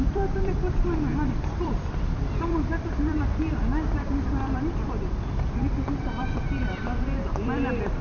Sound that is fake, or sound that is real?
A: fake